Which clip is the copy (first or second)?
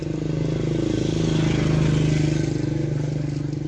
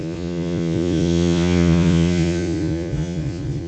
second